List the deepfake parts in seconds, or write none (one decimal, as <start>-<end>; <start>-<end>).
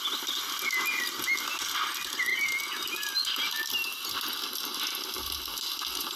none